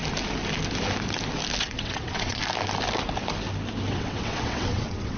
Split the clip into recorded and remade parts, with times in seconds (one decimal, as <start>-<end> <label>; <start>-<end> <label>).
0.0-1.6 recorded; 1.6-2.4 remade; 2.4-3.9 recorded; 3.9-5.2 remade

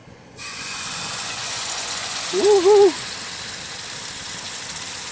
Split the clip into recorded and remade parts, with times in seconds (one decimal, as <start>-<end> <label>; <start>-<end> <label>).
0.0-3.1 remade; 3.1-5.1 recorded